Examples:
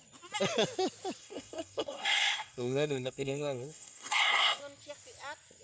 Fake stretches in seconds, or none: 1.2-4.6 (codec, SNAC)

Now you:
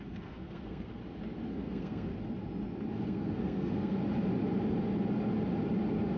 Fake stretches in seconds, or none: 0.0-1.0 (codec, SNAC); 1.5-2.1; 2.9-4.0

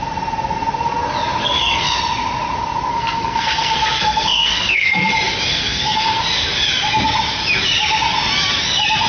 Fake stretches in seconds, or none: 1.4-2.0 (codec, SNAC); 2.9-5.1; 5.5-6.2

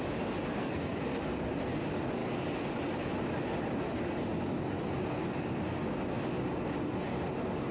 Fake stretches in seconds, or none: 0.5-1.0 (codec, SNAC)

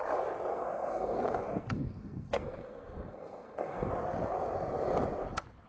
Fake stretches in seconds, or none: 0.5-3.9 (codec, SNAC)